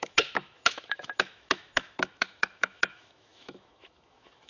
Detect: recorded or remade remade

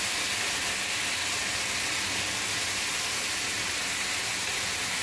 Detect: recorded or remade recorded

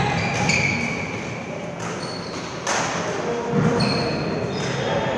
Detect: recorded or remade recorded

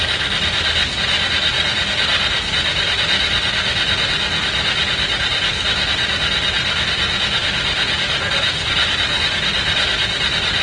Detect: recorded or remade recorded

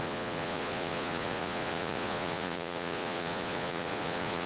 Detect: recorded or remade remade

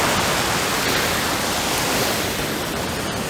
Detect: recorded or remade recorded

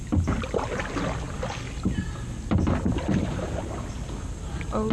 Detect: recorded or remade recorded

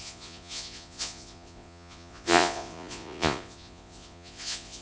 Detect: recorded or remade remade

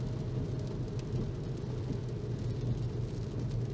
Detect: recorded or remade recorded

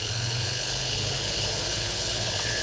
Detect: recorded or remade remade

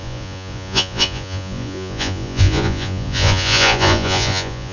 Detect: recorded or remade remade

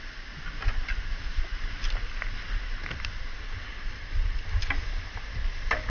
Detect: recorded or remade recorded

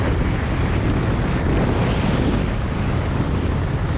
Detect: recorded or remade recorded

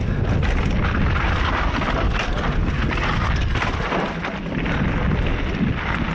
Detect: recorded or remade recorded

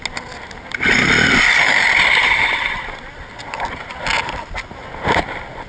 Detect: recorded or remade recorded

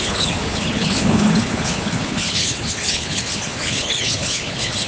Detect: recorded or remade remade